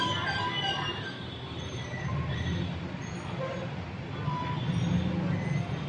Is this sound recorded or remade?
recorded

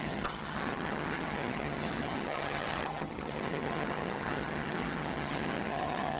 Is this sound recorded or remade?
remade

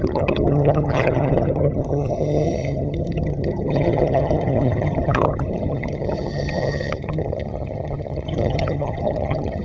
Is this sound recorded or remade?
remade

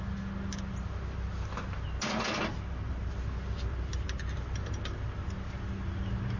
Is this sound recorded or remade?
recorded